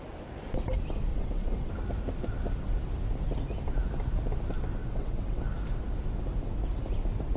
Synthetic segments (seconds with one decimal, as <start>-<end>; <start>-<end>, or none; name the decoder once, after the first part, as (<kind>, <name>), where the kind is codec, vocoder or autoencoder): 1.1-1.7 (vocoder, WaveNeXt); 4.8-5.4